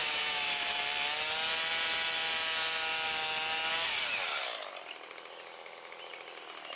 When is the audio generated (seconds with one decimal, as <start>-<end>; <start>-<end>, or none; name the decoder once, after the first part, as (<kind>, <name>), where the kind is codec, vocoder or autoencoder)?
0.0-0.8 (autoencoder, DAC-VAE)